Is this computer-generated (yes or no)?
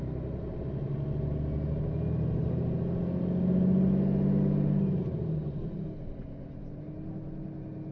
no